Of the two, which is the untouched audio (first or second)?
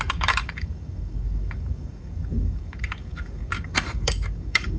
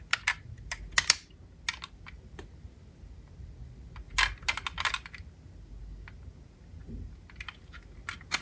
second